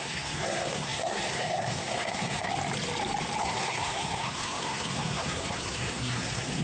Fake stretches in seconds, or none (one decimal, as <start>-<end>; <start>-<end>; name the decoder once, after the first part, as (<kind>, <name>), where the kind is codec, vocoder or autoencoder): 0.0-2.5 (codec, SNAC); 3.4-6.6